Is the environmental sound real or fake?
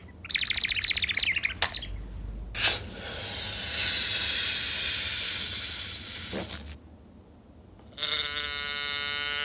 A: real